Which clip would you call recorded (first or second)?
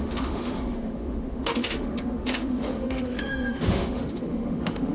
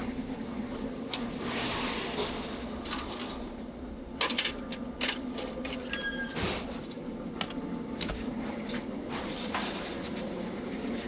second